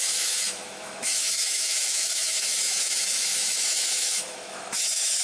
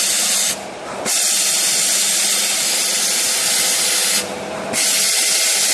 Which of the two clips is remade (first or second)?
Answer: first